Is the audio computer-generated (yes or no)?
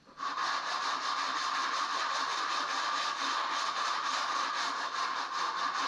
no